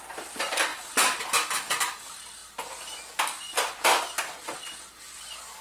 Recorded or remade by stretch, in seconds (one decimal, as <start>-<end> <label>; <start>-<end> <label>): 0.0-5.6 recorded